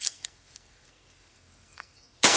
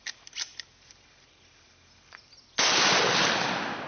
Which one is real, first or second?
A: second